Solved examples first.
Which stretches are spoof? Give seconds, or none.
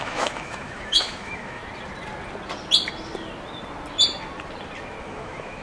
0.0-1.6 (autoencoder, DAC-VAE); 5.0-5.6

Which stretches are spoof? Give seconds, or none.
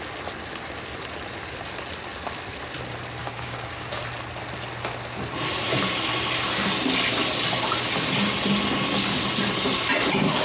3.2-3.9 (codec, DAC)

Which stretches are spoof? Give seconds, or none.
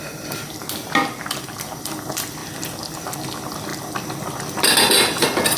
none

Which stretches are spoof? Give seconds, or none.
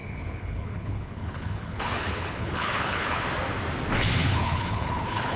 0.0-3.2 (codec, HILCodec); 4.2-5.4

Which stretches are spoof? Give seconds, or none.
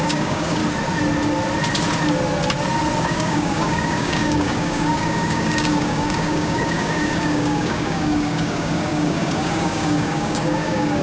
0.0-0.6 (codec, DAC); 3.0-11.0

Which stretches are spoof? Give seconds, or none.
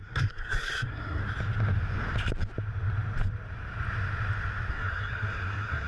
0.0-1.2 (codec, SNAC); 4.7-5.9